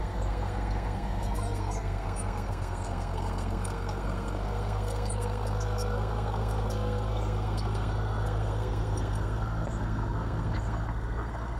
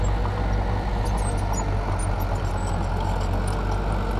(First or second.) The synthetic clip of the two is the first